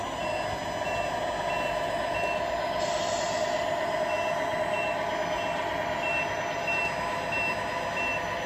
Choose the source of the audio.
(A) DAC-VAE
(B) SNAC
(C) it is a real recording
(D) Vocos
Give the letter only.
C